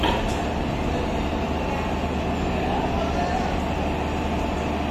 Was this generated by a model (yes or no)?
no